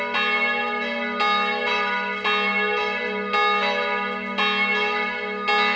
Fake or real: real